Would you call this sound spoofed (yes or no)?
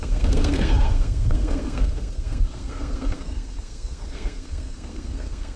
yes